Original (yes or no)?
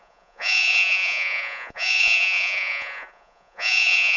no